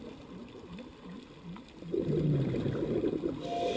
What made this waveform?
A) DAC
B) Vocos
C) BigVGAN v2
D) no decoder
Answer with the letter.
D